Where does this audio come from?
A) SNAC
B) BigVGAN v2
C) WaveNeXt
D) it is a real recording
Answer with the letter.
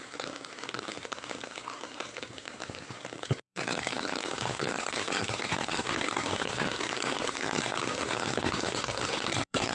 A